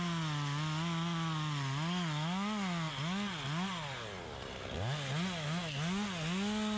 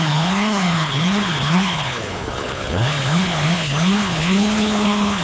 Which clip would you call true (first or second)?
first